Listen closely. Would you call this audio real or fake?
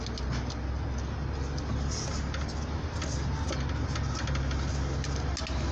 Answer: real